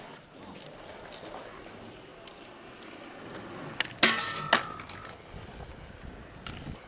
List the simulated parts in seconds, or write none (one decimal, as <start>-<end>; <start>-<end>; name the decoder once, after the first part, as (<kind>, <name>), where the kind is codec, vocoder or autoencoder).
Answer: none